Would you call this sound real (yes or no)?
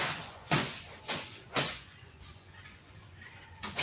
no